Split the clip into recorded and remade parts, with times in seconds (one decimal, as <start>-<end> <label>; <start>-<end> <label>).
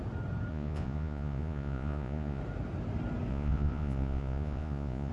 0.0-0.5 recorded; 0.5-2.4 remade; 2.4-3.3 recorded; 3.3-5.1 remade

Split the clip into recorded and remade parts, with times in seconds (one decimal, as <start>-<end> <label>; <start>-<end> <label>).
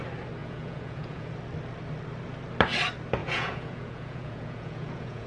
0.0-0.4 recorded; 0.4-1.3 remade; 1.3-3.2 recorded; 3.2-5.3 remade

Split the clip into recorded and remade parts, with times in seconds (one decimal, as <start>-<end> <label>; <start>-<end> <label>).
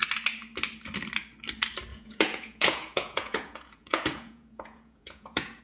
0.0-1.9 recorded; 1.9-5.6 remade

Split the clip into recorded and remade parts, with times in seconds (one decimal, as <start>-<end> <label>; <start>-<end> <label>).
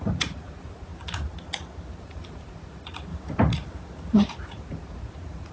0.0-0.9 remade; 0.9-2.0 recorded; 2.0-3.1 remade; 3.1-4.2 recorded; 4.2-5.5 remade